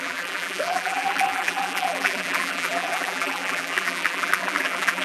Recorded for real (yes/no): no